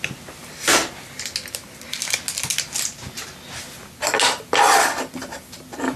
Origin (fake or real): real